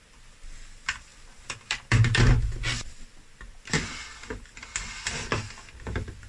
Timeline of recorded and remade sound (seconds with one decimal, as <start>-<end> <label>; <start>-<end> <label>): 0.0-6.3 recorded